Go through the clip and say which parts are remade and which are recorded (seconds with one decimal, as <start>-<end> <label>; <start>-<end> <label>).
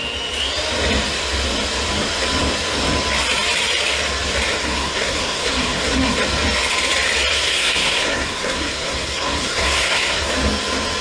0.0-4.6 recorded; 4.6-6.2 remade; 6.2-7.3 recorded; 7.3-10.3 remade; 10.3-11.0 recorded